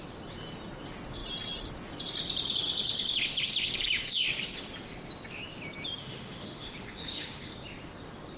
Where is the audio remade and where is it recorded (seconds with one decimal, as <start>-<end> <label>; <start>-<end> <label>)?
0.0-6.0 recorded; 6.0-7.5 remade; 7.5-8.4 recorded